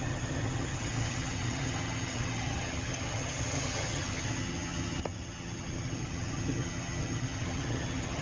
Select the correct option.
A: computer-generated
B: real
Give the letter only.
A